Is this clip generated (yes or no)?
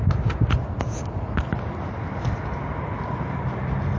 no